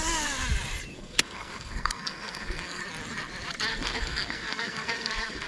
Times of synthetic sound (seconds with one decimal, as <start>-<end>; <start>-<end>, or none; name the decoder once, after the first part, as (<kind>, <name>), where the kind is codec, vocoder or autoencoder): 0.9-2.8 (codec, SNAC); 3.7-5.5